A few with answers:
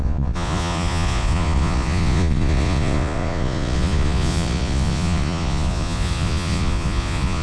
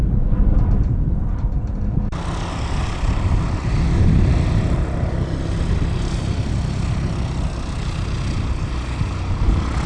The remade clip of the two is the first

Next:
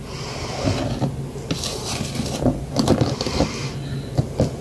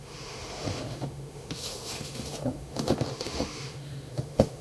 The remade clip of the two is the second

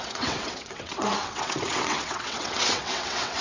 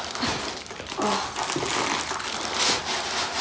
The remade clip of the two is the first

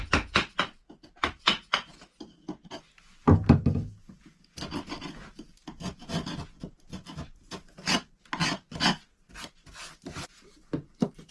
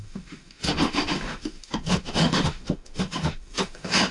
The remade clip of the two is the second